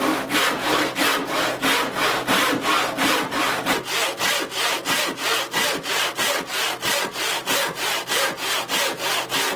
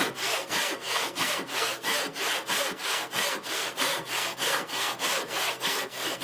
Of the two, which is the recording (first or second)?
first